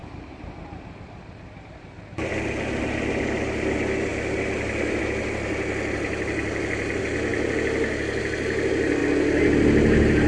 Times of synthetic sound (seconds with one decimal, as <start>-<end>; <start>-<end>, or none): 0.0-2.3

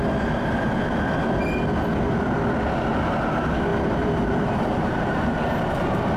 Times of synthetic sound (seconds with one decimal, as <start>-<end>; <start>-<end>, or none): 3.7-5.4

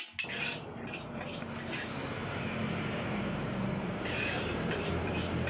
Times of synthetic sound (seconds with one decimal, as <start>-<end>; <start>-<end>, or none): 2.2-4.9

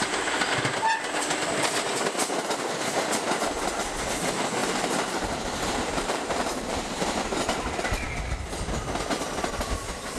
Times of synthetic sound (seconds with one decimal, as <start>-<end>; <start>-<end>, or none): 4.6-7.3

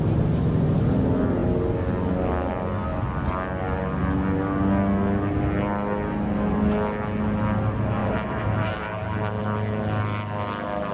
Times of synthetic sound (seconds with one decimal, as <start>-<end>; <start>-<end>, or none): 8.0-9.4